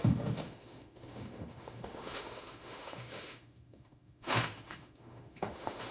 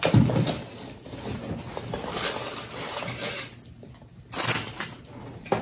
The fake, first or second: first